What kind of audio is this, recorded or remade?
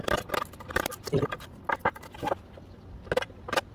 recorded